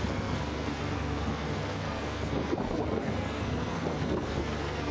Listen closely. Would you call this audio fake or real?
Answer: fake